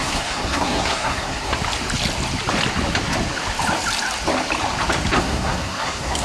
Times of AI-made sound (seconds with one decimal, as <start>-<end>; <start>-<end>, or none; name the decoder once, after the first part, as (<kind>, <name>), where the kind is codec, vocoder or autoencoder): 0.0-1.5 (codec, SNAC); 5.2-6.2